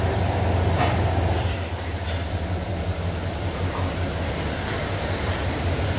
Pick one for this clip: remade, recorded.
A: remade